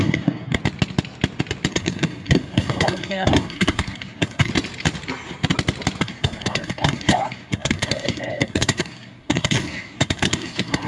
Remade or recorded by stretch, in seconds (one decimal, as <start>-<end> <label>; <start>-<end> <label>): 0.0-0.6 remade; 0.6-1.7 recorded; 1.7-4.5 remade; 4.5-6.0 recorded; 6.0-10.9 remade